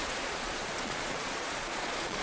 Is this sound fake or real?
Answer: fake